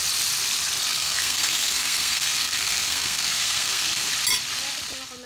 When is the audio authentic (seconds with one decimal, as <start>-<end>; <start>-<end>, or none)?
0.0-0.9; 4.1-5.3